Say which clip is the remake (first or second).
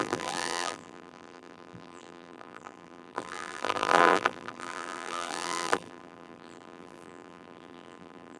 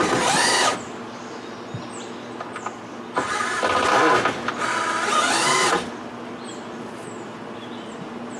first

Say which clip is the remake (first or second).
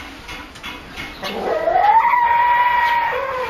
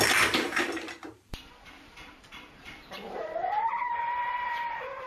second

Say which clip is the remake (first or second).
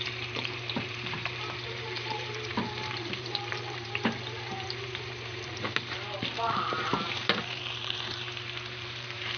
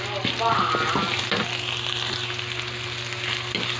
first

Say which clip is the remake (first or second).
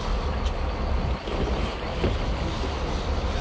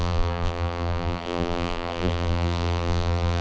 second